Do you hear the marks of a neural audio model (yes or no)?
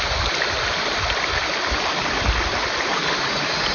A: no